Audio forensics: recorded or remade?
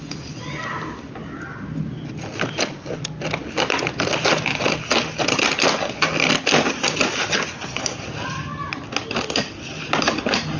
recorded